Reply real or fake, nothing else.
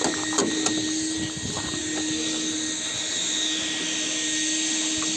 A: real